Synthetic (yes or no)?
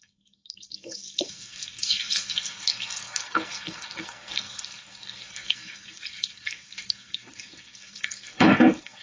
yes